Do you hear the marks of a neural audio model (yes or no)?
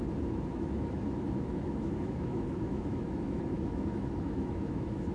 yes